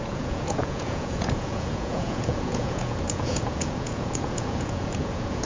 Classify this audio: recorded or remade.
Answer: remade